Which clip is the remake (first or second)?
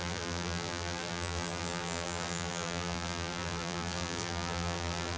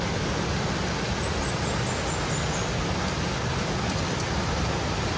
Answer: first